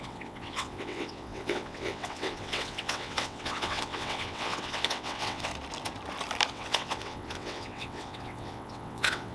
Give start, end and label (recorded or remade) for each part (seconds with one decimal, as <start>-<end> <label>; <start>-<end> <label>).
0.0-5.5 remade; 5.5-6.5 recorded; 6.5-9.3 remade